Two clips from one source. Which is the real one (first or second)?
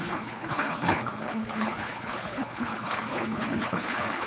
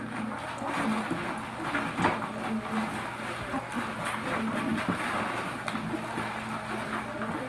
second